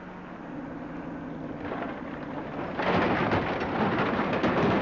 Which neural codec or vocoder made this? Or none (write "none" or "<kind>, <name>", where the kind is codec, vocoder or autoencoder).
none